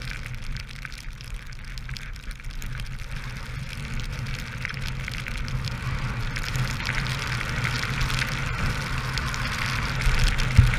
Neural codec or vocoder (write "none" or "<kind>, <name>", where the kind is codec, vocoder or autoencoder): none